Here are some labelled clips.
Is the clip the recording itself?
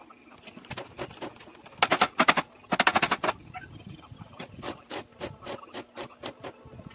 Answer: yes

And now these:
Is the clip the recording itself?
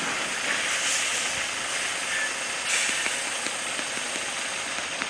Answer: yes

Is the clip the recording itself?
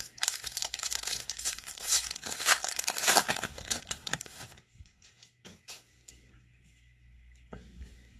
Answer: no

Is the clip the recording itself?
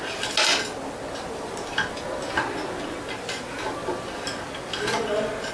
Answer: yes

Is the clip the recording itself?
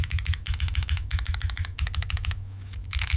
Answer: no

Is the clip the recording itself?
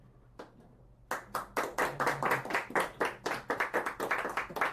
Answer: yes